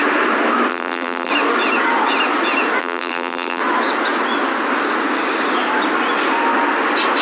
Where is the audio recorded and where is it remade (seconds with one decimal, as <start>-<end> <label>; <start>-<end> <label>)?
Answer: 0.0-0.7 recorded; 0.7-1.3 remade; 1.3-2.8 recorded; 2.8-3.6 remade; 3.6-7.2 recorded